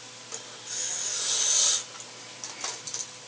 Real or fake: real